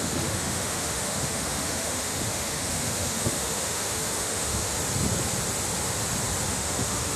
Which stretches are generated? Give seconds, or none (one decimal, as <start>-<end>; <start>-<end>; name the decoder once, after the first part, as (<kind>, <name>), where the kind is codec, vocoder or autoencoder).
0.0-4.7 (autoencoder, DAC-VAE); 6.5-7.2